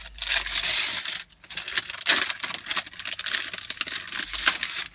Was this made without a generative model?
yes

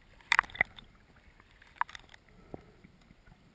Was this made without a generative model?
yes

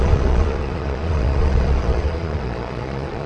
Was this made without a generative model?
no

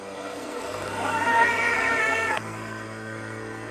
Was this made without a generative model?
no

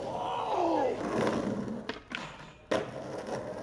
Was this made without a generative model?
yes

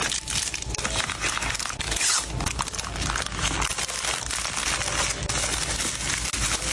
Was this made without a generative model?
yes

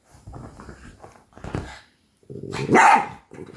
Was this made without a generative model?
yes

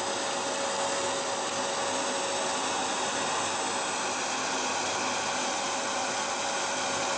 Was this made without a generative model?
yes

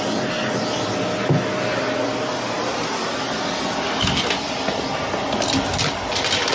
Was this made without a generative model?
yes